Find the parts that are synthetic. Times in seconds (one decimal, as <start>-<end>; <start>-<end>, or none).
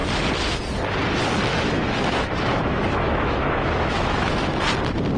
1.5-4.6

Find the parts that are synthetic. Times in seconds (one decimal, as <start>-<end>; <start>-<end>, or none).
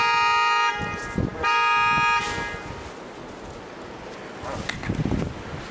none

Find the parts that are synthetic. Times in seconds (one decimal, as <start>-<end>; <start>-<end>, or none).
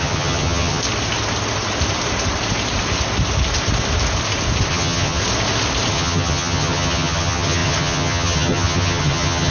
0.0-0.8; 4.7-5.2; 5.9-9.5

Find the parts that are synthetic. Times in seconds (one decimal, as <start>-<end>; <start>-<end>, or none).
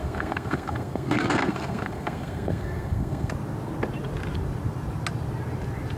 0.0-3.3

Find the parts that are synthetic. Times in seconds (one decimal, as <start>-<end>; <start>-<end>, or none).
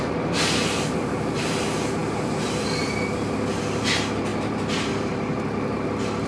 none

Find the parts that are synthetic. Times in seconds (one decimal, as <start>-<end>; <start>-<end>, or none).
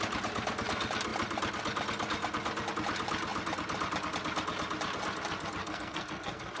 5.6-6.6